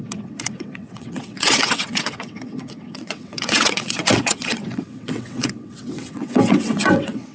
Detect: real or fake fake